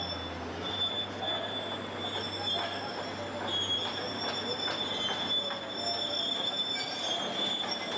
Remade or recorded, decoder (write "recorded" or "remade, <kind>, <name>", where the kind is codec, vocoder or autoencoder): recorded